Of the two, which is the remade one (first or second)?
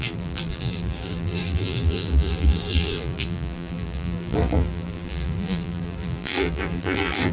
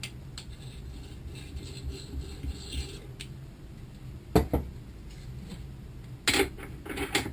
first